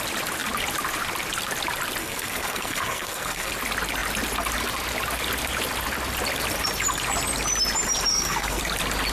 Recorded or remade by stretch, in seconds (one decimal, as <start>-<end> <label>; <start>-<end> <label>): 0.0-2.0 recorded; 2.0-3.5 remade; 3.5-8.1 recorded; 8.1-8.6 remade; 8.6-9.1 recorded